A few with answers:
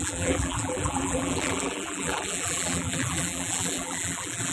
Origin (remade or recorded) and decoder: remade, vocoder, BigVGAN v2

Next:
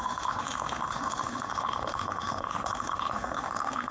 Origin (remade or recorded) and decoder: remade, autoencoder, DAC-VAE